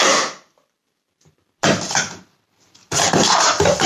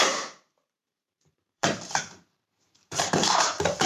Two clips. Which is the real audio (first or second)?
first